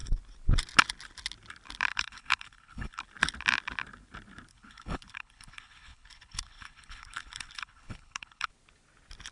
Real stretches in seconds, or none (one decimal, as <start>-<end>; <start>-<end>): 0.0-1.9; 3.0-4.5; 8.5-9.3